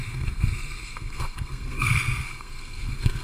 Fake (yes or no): yes